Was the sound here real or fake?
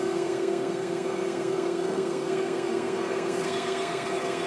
fake